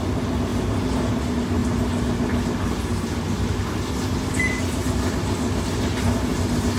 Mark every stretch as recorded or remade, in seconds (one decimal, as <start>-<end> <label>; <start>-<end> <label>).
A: 0.0-0.5 recorded; 0.5-1.1 remade; 1.1-6.8 recorded